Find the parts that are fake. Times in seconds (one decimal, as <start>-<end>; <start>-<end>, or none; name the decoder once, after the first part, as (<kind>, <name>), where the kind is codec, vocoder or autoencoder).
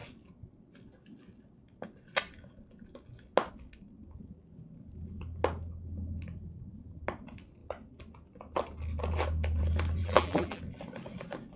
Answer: 10.0-10.6 (vocoder, BigVGAN v2)